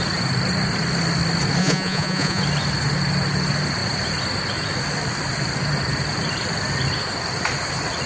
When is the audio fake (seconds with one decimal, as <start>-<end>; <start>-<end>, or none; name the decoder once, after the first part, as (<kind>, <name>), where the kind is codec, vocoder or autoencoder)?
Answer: 1.6-2.4 (vocoder, Vocos)